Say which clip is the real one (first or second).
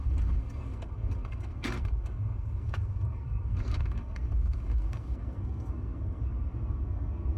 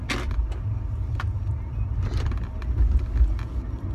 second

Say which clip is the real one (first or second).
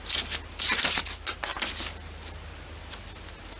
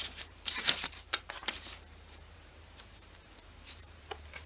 first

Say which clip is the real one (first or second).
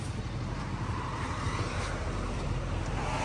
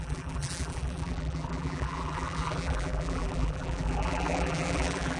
first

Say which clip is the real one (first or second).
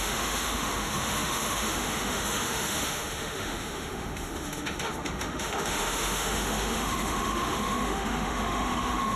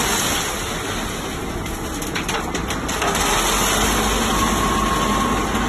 second